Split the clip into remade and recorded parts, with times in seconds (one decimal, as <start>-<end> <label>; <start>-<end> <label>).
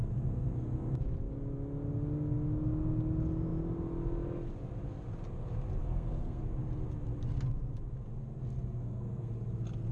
0.0-5.8 recorded; 5.8-6.4 remade; 6.4-8.8 recorded; 8.8-9.3 remade; 9.3-9.9 recorded